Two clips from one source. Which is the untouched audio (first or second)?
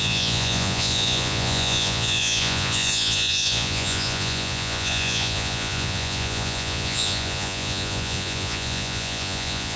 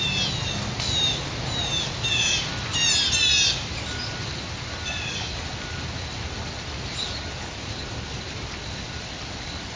second